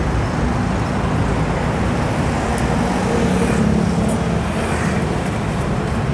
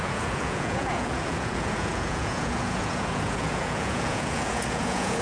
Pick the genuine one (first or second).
first